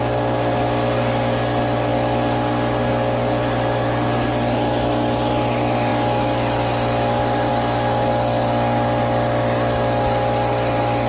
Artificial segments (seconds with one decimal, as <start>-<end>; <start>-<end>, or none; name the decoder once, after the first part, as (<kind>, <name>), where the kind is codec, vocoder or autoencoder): none